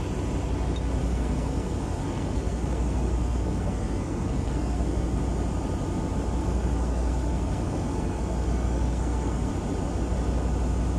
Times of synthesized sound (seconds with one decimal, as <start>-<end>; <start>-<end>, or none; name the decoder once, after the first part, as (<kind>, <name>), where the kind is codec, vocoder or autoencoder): 1.0-5.2 (codec, SNAC); 6.4-9.5